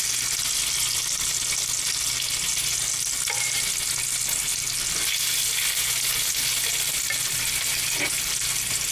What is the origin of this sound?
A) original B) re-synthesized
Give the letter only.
A